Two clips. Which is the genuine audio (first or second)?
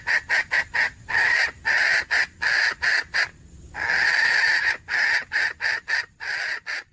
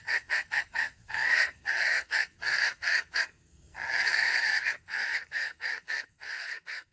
first